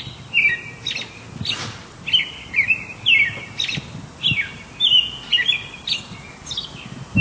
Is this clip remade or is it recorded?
recorded